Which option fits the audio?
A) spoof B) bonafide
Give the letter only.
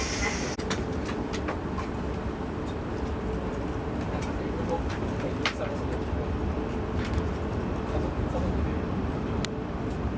B